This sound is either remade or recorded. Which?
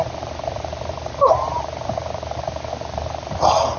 remade